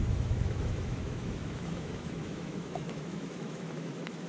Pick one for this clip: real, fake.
fake